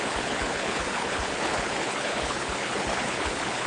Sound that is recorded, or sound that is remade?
remade